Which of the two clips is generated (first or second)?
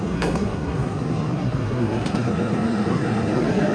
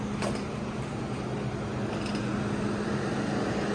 first